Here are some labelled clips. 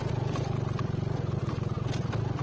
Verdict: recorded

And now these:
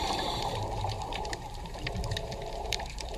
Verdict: remade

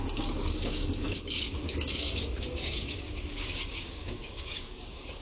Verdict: remade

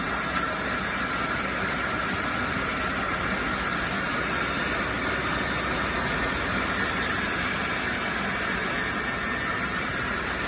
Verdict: recorded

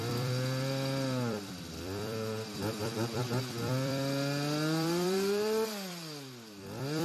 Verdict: remade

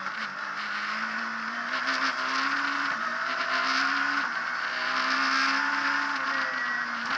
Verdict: recorded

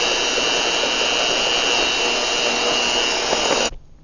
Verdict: recorded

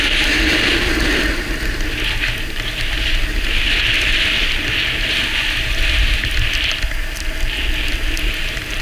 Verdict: recorded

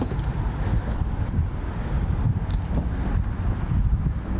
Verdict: remade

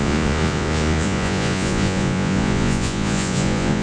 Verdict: remade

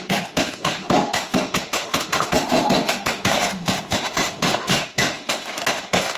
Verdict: remade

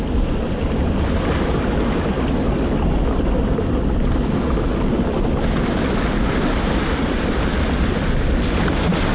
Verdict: recorded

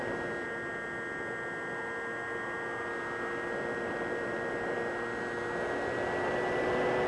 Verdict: recorded